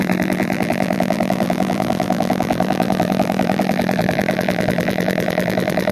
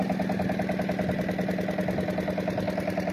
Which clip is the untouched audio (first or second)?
second